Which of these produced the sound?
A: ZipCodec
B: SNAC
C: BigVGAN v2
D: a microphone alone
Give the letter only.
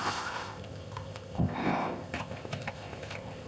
A